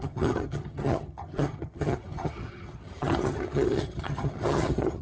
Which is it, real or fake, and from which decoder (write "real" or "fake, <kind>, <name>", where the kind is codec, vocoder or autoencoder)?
fake, vocoder, HiFi-GAN